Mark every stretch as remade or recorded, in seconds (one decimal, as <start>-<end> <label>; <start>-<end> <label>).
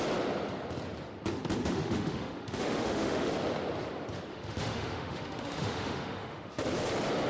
0.0-1.6 recorded; 1.6-3.3 remade; 3.3-4.3 recorded; 4.3-6.7 remade; 6.7-7.3 recorded